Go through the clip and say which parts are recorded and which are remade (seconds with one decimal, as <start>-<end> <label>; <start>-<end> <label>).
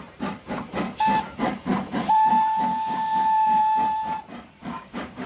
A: 0.0-2.7 recorded; 2.7-3.6 remade; 3.6-4.6 recorded; 4.6-5.3 remade